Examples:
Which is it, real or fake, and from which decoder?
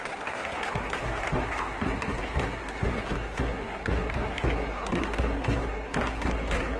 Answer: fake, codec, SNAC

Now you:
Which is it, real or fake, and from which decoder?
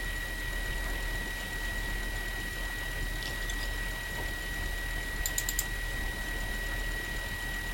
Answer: real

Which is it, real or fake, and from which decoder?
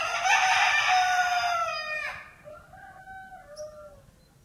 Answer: real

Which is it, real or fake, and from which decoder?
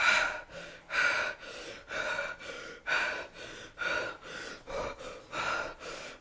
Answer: real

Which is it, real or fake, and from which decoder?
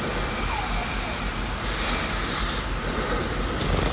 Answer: real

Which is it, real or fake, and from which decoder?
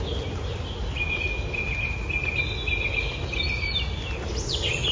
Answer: real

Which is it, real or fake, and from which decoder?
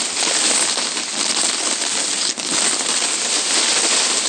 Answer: real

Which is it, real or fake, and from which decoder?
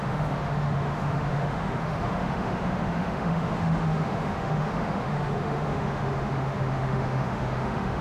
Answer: fake, autoencoder, DAC-VAE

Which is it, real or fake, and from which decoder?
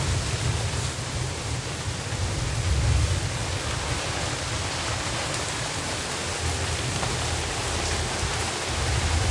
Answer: real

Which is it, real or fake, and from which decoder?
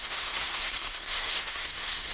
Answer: fake, codec, SNAC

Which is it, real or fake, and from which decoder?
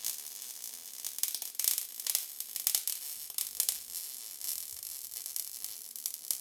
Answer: real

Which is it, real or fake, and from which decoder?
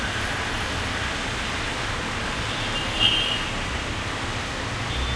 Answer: real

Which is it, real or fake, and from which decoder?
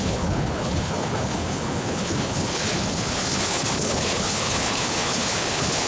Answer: fake, codec, HILCodec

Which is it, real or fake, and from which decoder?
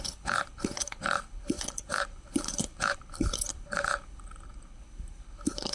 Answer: fake, codec, HILCodec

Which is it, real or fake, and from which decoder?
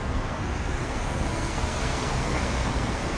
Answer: fake, codec, SNAC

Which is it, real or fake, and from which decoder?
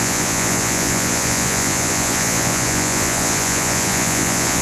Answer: fake, vocoder, Vocos